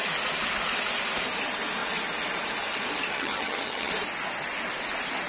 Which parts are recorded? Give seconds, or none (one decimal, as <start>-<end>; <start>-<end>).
0.0-3.1; 3.9-5.3